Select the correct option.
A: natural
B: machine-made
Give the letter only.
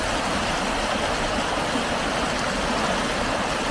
A